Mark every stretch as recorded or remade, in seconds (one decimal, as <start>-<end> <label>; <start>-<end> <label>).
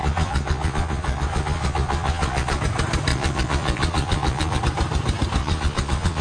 0.0-2.6 remade; 2.6-3.1 recorded; 3.1-4.6 remade; 4.6-5.4 recorded; 5.4-6.2 remade